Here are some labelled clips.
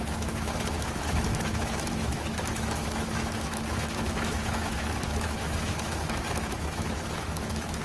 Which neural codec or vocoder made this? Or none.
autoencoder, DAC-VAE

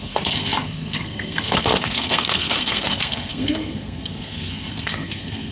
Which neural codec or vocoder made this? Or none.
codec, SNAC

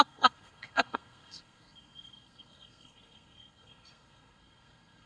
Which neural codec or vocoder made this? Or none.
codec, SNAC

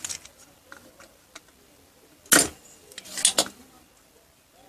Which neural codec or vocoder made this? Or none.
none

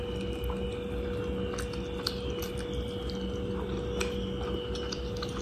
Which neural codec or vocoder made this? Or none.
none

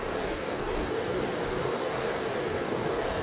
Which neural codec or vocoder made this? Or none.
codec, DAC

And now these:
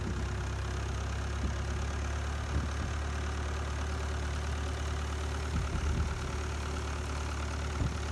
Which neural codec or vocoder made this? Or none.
none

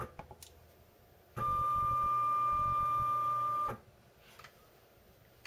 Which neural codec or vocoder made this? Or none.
none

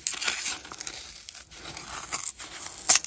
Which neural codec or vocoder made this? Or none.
none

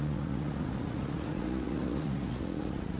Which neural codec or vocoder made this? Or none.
vocoder, Vocos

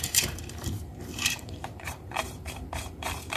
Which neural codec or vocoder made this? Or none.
vocoder, BigVGAN v2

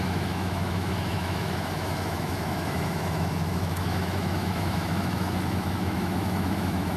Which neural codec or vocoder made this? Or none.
autoencoder, DAC-VAE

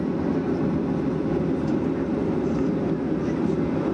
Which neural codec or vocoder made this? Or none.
none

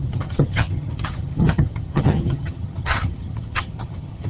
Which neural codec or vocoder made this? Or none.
vocoder, HiFi-GAN